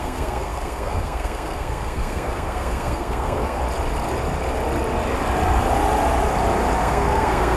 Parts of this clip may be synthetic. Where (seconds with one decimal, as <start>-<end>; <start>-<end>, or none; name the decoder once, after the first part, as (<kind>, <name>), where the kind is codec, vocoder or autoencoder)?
0.0-3.6 (codec, SNAC); 6.8-7.6

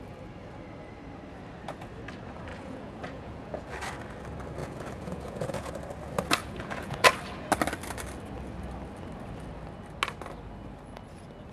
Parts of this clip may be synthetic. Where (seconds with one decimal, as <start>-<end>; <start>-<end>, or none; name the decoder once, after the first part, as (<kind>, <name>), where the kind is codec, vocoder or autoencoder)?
2.5-3.7 (vocoder, Vocos); 4.6-5.7; 6.4-7.1

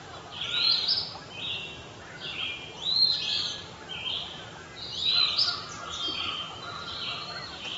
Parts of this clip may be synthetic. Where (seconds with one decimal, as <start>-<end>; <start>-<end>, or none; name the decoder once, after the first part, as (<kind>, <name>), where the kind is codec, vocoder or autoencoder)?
none